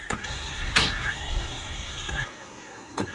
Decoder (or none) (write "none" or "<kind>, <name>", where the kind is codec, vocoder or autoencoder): codec, SNAC